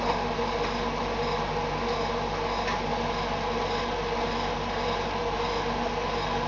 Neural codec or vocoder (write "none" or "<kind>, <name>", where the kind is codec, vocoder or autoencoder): none